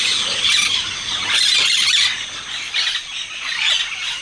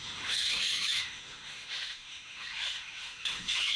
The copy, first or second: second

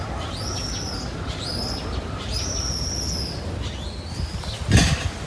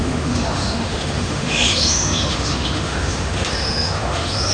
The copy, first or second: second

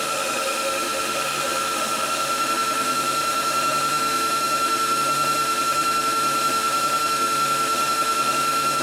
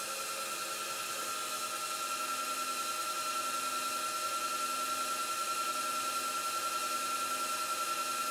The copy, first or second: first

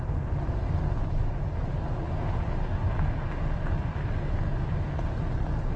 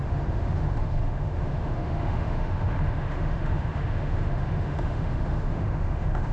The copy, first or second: second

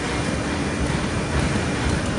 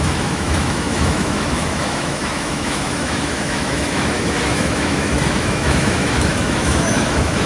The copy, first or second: second